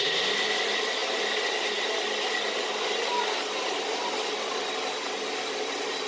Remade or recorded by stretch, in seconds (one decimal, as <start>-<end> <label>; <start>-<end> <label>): 0.0-6.1 recorded